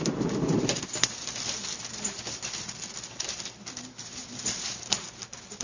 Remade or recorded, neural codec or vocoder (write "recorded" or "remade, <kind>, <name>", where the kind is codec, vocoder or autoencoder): remade, vocoder, BigVGAN v2